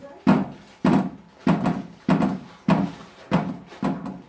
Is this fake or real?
real